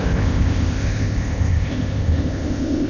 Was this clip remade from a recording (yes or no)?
yes